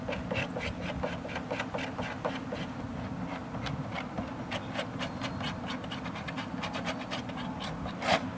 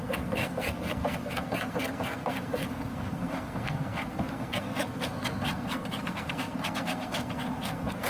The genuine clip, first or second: first